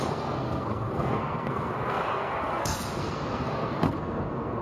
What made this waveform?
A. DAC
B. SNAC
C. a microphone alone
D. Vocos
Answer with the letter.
B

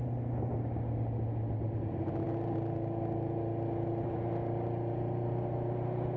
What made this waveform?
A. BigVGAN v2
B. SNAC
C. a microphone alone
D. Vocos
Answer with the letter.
C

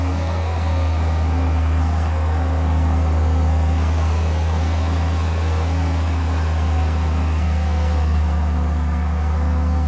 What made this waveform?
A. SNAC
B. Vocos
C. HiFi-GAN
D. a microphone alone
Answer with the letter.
A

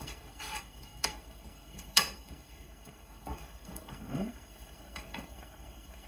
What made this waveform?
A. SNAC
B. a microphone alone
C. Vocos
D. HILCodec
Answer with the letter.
A